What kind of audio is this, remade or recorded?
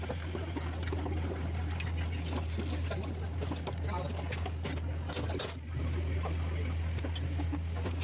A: recorded